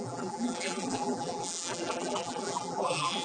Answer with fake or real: fake